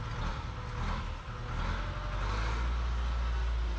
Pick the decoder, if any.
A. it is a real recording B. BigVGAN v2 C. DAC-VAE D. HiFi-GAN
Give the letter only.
A